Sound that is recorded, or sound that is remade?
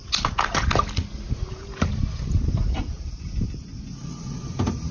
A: recorded